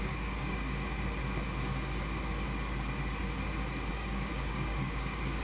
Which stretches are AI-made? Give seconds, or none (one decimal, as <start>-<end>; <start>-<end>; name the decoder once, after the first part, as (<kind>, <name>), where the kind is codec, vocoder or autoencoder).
0.0-0.7 (codec, DAC); 3.9-5.4